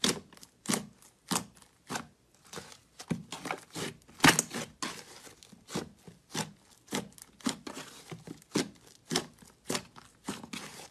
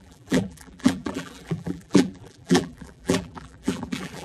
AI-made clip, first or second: second